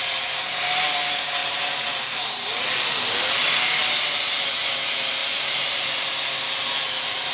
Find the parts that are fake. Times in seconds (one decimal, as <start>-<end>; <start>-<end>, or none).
1.4-3.3; 5.2-6.0